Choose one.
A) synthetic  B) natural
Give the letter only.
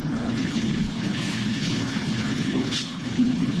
A